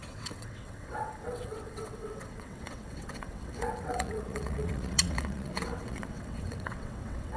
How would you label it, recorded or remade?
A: remade